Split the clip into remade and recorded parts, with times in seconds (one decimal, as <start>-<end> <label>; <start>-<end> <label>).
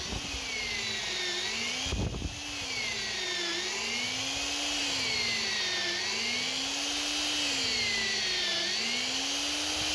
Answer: 0.0-9.9 recorded